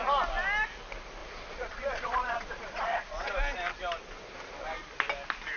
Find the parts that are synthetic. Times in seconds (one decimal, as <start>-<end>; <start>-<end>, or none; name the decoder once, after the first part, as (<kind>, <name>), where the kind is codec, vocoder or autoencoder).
1.2-3.3 (vocoder, Vocos)